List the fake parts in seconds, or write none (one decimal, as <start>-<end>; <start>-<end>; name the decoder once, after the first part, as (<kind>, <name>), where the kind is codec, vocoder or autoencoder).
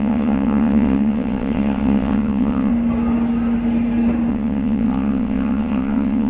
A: 0.0-2.7 (vocoder, WaveNeXt); 4.3-6.3